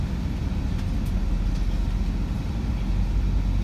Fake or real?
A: real